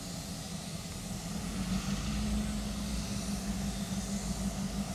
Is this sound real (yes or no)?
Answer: yes